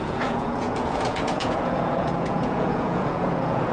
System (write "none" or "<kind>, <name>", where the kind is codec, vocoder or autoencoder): vocoder, Vocos